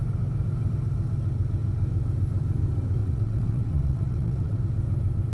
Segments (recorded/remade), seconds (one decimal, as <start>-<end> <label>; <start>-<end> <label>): 0.0-3.0 recorded; 3.0-4.6 remade; 4.6-5.3 recorded